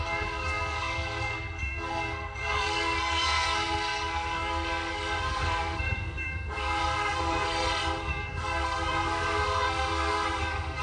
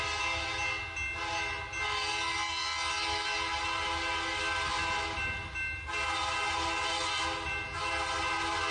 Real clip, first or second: second